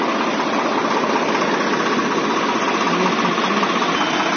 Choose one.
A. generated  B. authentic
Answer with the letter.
B